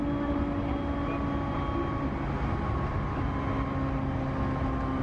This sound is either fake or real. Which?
real